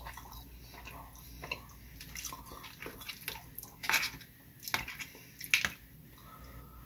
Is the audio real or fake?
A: real